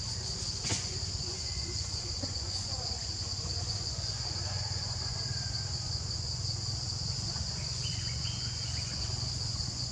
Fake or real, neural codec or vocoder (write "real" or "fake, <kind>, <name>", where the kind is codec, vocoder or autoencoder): fake, vocoder, Vocos